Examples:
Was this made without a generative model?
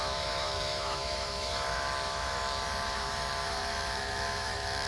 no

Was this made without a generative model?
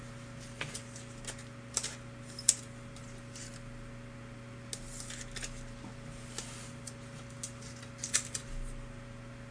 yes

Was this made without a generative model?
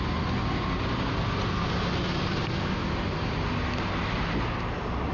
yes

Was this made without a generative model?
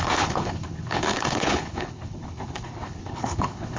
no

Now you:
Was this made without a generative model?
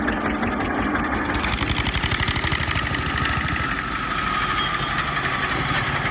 yes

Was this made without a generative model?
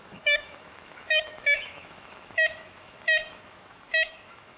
no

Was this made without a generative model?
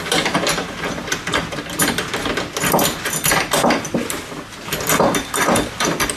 yes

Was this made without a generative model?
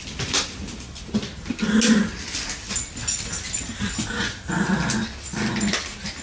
yes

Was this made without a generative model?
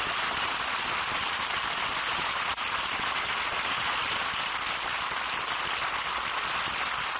yes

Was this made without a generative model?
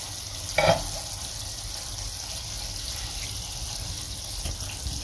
yes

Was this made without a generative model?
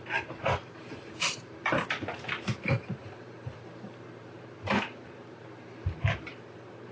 no